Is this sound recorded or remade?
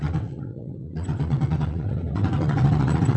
remade